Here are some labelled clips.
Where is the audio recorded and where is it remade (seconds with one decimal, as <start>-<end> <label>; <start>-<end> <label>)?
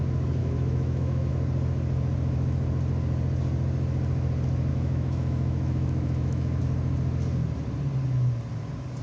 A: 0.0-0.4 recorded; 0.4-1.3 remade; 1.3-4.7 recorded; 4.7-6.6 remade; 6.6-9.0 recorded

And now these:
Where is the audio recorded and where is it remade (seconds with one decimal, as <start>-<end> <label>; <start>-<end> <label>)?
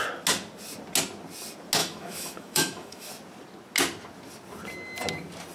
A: 0.0-1.8 recorded; 1.8-3.1 remade; 3.1-5.5 recorded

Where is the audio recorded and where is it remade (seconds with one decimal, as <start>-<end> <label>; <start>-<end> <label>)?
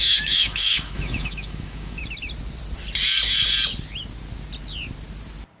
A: 0.0-2.0 remade; 2.0-5.6 recorded